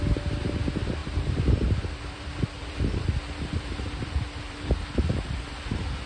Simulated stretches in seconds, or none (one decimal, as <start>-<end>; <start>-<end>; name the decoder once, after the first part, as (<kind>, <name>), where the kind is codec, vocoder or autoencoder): 1.0-4.7 (vocoder, BigVGAN v2)